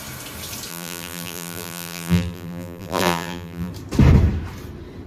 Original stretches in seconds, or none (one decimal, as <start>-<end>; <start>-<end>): 0.0-0.7; 3.7-5.1